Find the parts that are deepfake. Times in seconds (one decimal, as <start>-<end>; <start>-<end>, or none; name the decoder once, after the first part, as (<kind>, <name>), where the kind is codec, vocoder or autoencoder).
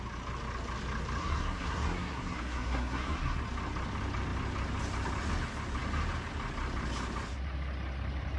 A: 1.2-3.4 (codec, SNAC)